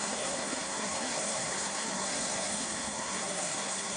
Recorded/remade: remade